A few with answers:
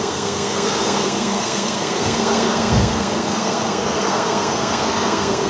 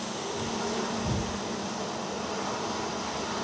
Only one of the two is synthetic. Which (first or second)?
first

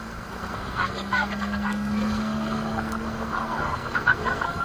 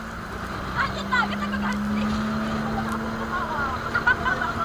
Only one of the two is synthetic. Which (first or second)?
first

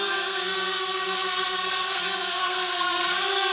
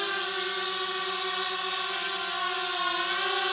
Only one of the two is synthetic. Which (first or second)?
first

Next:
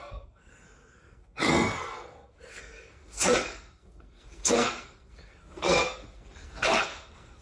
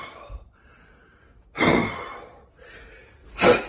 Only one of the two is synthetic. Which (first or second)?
first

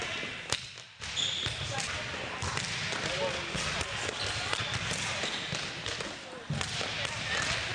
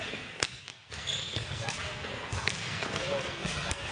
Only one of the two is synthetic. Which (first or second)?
second